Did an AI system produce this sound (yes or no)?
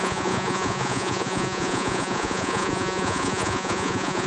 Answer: yes